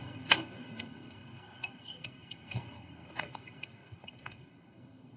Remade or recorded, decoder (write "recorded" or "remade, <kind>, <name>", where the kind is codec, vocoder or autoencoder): remade, codec, SNAC